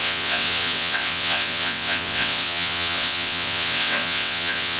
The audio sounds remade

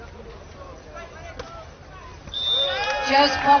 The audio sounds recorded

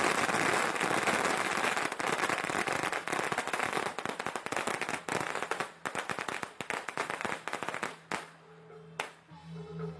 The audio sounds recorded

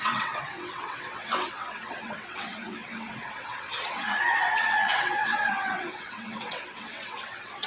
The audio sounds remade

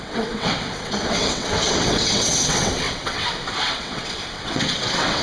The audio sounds remade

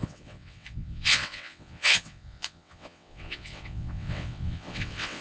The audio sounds remade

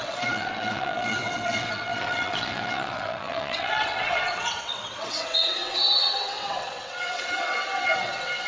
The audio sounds remade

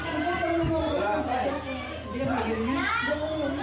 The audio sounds recorded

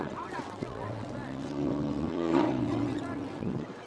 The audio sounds remade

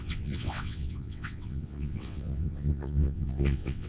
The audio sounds remade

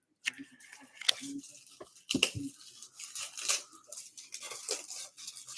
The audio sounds recorded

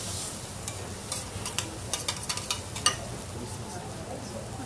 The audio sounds recorded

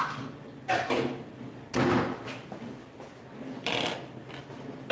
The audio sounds recorded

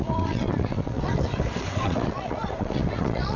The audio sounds remade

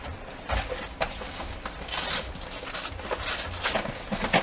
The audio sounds recorded